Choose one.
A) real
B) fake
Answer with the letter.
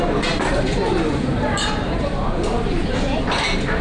B